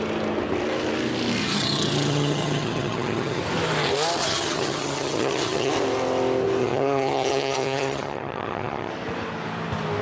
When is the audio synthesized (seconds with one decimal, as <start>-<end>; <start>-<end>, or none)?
1.4-3.4; 4.2-5.7; 6.6-8.9